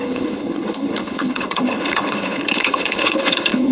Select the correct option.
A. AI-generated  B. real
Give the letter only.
A